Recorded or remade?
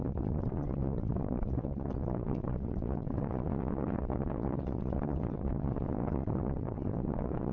remade